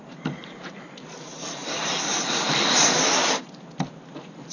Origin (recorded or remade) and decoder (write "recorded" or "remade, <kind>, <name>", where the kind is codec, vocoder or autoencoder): recorded